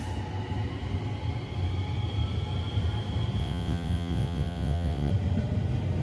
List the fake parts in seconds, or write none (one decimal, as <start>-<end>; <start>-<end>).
3.4-5.1